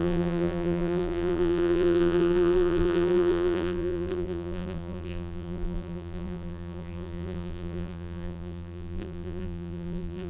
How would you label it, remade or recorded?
remade